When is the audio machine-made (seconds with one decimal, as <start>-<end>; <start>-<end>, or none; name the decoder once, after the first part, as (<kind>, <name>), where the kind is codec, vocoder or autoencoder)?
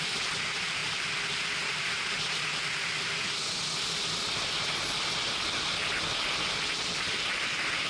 none